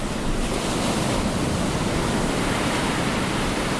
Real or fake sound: fake